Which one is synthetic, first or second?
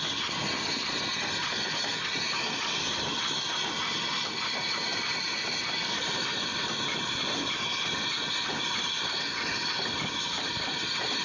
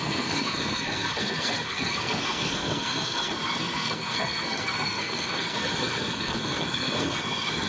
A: second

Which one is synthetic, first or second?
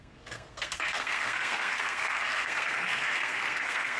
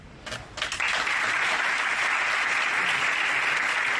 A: first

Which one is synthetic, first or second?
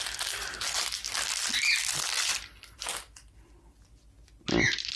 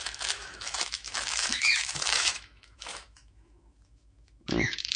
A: second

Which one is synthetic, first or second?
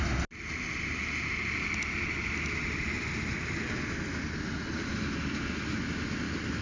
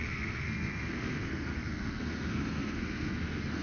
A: second